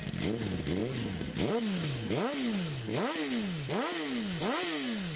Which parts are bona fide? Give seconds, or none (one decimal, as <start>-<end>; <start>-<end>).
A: 0.0-5.2